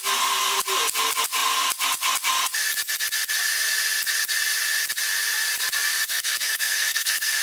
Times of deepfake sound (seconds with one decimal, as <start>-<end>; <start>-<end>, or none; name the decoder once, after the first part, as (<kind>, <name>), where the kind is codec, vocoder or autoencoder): 5.9-7.4 (codec, SNAC)